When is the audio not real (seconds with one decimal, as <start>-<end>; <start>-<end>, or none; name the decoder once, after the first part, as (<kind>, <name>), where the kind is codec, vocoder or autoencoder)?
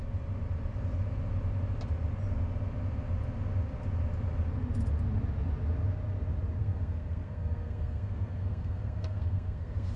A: 6.6-10.0 (codec, SNAC)